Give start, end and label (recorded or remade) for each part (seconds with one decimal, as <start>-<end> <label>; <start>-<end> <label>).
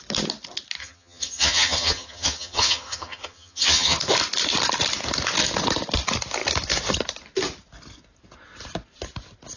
0.0-0.8 recorded; 0.8-4.0 remade; 4.0-9.6 recorded